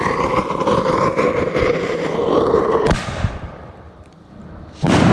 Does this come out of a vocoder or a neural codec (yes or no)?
yes